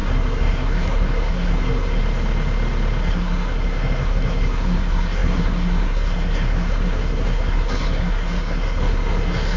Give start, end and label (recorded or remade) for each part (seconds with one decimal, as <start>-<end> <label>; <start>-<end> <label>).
0.0-2.0 remade; 2.0-3.0 recorded; 3.0-9.6 remade